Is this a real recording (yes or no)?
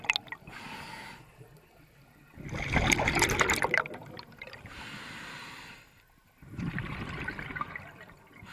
yes